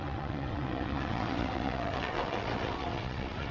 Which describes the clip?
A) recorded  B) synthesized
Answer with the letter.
B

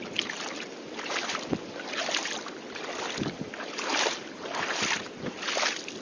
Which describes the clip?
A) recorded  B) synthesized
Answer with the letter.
A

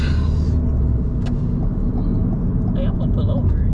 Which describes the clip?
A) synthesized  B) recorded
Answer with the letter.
B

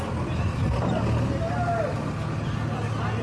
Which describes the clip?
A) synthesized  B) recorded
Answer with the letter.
B